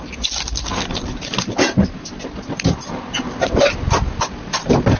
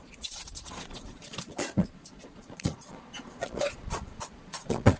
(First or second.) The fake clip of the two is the second